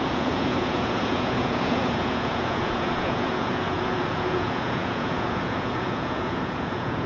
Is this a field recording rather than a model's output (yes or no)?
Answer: no